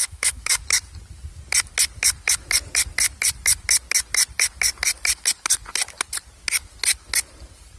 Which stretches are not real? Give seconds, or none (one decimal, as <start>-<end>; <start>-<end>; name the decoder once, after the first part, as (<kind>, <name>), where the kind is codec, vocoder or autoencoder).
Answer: 0.0-0.6 (autoencoder, DAC-VAE)